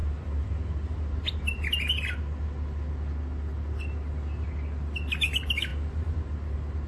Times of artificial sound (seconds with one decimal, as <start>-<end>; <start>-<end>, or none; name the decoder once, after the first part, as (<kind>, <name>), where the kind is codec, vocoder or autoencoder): none